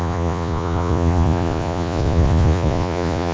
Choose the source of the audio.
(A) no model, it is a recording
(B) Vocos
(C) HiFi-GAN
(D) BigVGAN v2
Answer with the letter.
B